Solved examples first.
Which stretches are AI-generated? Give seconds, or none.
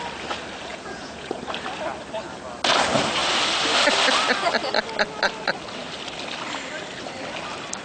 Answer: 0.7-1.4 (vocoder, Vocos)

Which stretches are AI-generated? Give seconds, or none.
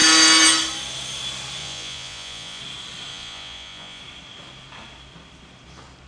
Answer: 1.6-2.6 (vocoder, Vocos); 3.1-4.0